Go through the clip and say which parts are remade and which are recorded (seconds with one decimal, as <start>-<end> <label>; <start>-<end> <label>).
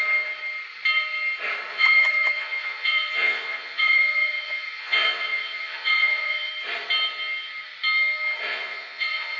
0.0-1.7 recorded; 1.7-6.5 remade; 6.5-8.5 recorded; 8.5-9.4 remade